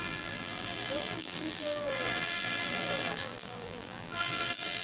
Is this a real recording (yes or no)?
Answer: no